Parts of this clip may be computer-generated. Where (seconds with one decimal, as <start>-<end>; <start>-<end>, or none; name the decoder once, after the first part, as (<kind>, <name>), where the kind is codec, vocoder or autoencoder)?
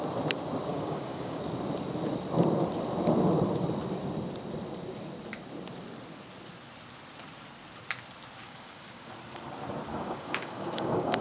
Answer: 0.7-1.4 (codec, DAC); 8.4-9.1; 9.9-11.2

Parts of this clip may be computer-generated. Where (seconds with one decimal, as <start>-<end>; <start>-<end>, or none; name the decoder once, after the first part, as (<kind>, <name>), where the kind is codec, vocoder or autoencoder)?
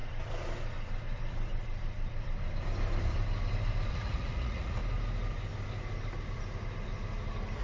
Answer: 3.9-4.8 (vocoder, Vocos)